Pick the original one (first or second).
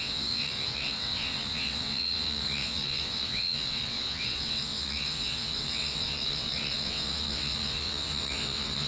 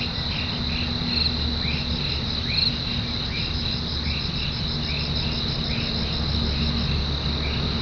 second